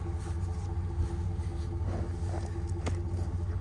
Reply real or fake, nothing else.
real